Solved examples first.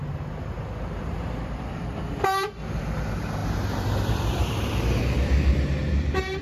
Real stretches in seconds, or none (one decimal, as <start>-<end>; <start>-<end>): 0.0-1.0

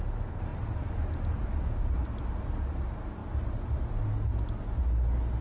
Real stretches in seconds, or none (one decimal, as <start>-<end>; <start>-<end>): 0.0-5.4

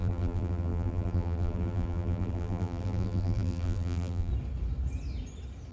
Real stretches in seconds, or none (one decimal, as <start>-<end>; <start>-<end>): 4.3-5.7